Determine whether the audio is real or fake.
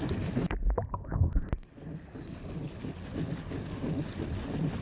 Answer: real